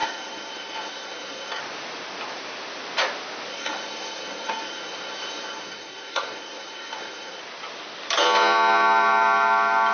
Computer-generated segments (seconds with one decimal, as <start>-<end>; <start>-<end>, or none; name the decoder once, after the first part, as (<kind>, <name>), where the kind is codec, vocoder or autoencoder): 0.0-1.6 (codec, SNAC); 3.5-7.4